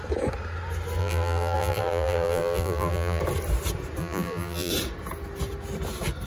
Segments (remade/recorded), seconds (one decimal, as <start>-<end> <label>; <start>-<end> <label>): 0.0-1.0 recorded; 1.0-3.2 remade; 3.2-4.0 recorded; 4.0-4.7 remade; 4.7-6.3 recorded